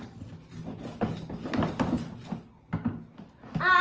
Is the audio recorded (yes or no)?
yes